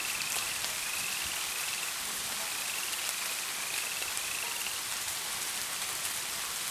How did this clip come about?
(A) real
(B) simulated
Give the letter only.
A